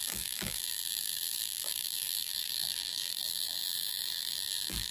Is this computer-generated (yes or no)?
yes